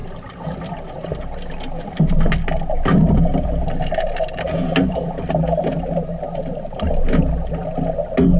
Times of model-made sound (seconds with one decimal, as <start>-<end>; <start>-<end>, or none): none

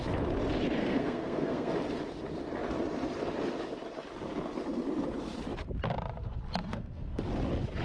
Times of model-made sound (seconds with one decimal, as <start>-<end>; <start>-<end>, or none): 0.8-1.7; 6.6-7.2

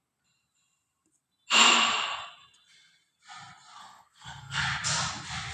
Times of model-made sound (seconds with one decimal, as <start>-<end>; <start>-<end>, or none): 3.8-4.6

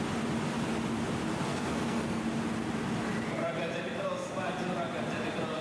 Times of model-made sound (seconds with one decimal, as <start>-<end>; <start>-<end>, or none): 1.5-2.2

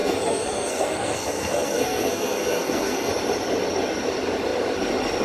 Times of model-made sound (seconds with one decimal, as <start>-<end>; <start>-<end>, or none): 0.0-3.1

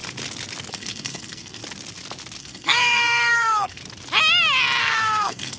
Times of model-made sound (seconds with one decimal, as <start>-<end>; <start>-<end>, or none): 0.7-1.6; 2.4-3.8; 4.8-5.6